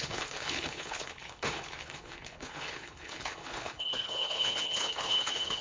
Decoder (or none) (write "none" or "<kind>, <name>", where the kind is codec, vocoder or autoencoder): codec, HILCodec